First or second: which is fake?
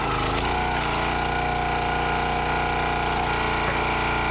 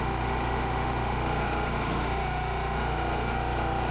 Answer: second